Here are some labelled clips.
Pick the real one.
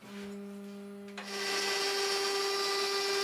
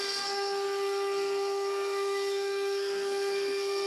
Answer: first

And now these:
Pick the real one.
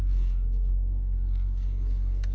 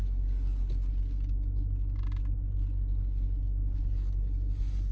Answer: second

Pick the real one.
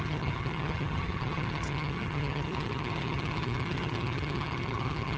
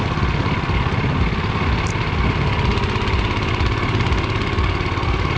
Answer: second